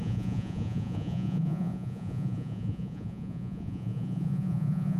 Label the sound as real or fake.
fake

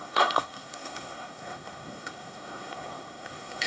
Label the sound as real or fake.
fake